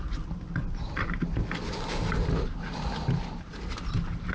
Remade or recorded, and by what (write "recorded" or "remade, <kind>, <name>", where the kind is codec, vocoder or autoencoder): recorded